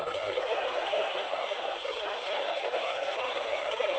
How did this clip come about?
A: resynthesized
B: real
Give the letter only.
A